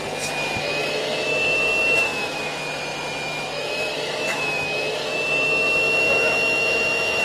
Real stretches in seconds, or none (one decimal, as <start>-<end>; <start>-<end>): 0.0-0.6